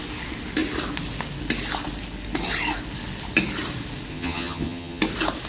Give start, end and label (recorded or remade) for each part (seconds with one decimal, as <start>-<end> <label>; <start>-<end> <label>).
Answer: 0.0-4.1 recorded; 4.1-5.0 remade; 5.0-5.5 recorded